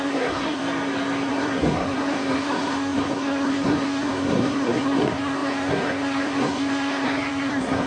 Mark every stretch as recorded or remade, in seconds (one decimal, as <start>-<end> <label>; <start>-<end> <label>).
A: 0.0-0.6 remade; 0.6-1.3 recorded; 1.3-7.9 remade